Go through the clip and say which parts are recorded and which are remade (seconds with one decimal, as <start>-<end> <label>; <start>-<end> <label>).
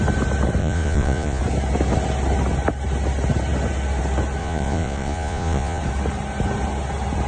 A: 0.0-0.6 recorded; 0.6-1.4 remade; 1.4-4.4 recorded; 4.4-5.8 remade; 5.8-7.3 recorded